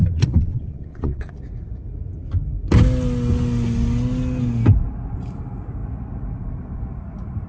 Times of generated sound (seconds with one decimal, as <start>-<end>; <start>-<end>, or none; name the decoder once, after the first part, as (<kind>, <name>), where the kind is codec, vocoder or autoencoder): 0.0-1.4 (vocoder, Vocos)